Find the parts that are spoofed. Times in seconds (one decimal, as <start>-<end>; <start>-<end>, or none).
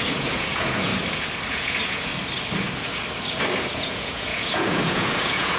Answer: 0.0-0.9; 1.5-2.1; 3.6-5.6